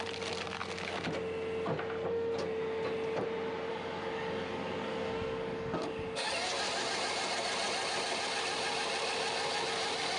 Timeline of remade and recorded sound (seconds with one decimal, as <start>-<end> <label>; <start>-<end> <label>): 0.0-3.7 recorded; 3.7-6.3 remade; 6.3-10.2 recorded